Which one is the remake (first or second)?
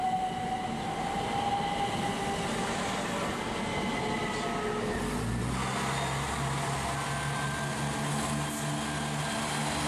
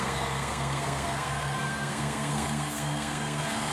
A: second